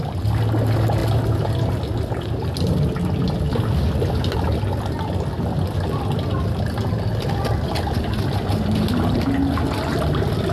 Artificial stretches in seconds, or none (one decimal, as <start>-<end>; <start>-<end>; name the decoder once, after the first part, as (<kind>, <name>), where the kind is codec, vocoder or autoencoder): 9.9-10.5 (vocoder, BigVGAN v2)